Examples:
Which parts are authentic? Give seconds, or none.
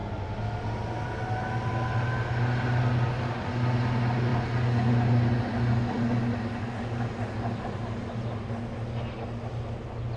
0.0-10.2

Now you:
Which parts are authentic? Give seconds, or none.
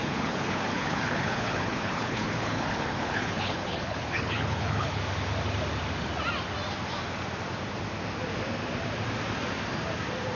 5.0-10.4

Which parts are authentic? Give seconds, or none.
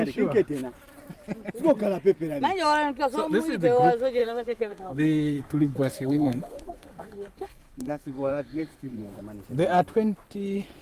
0.0-4.2; 9.2-10.8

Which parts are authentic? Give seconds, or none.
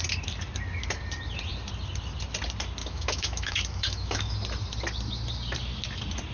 0.0-2.8; 4.3-6.3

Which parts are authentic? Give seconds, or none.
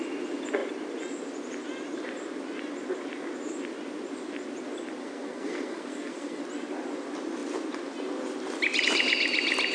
0.0-5.0; 6.4-9.7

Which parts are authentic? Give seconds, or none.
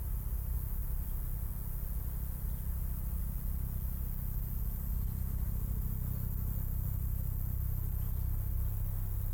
0.0-9.3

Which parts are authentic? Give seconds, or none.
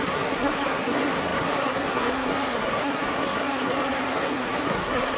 none